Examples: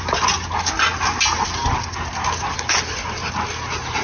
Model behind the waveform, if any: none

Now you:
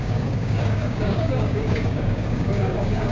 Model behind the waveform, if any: codec, DAC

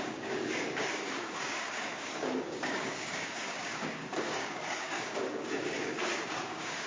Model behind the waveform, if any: codec, DAC